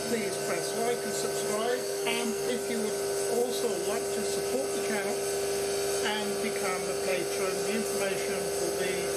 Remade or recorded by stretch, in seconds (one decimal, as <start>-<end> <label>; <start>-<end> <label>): 0.0-1.7 recorded; 1.7-2.5 remade; 2.5-9.2 recorded